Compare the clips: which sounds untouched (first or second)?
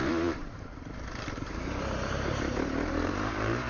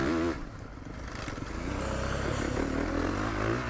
second